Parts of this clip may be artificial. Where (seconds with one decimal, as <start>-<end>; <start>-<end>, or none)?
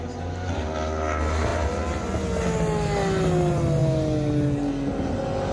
none